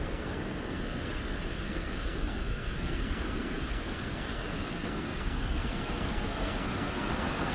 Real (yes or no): no